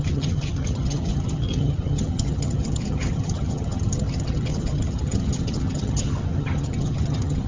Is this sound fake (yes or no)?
yes